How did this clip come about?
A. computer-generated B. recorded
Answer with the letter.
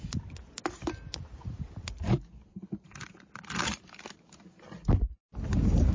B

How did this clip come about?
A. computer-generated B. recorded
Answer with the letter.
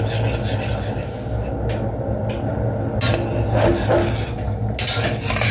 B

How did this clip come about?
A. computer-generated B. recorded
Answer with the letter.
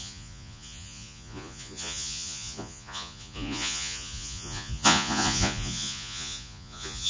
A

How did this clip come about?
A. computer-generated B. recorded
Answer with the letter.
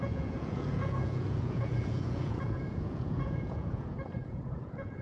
A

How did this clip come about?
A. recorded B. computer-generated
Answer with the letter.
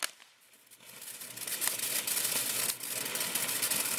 A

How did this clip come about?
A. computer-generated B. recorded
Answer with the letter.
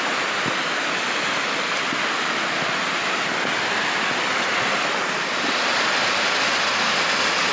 B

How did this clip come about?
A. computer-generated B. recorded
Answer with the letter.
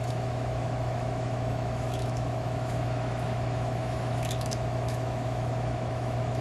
A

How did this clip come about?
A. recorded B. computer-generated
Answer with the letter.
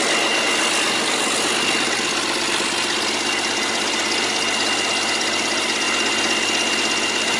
A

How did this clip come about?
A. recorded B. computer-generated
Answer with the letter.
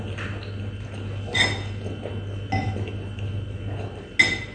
A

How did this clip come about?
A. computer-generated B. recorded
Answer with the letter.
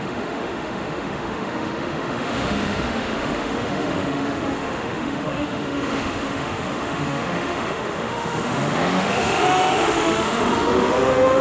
A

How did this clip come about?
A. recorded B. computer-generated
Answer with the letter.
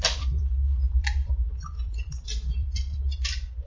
B